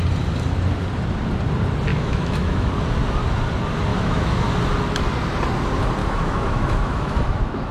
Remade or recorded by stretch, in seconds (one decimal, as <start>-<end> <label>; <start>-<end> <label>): 0.0-1.9 recorded; 1.9-2.7 remade; 2.7-3.9 recorded; 3.9-4.5 remade; 4.5-6.0 recorded; 6.0-7.7 remade